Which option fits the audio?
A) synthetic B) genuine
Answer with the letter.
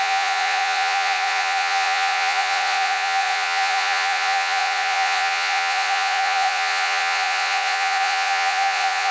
A